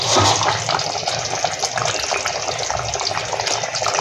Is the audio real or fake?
real